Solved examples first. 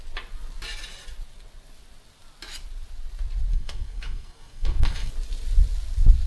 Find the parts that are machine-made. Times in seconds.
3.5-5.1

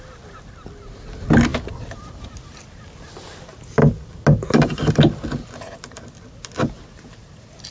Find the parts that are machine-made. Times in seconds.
none

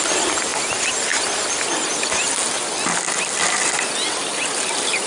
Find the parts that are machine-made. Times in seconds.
0.0-0.5; 3.6-5.1

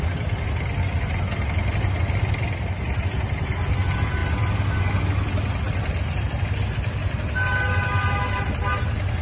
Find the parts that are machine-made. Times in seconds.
none

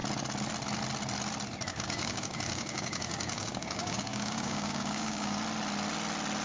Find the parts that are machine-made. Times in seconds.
1.7-5.4

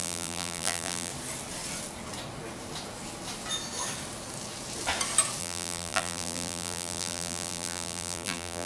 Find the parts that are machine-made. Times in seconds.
0.0-1.1; 5.4-8.7

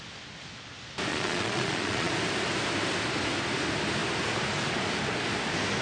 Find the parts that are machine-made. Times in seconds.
1.1-2.1